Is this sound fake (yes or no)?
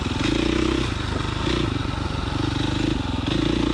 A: no